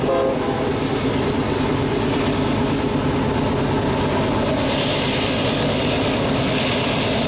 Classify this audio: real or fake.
real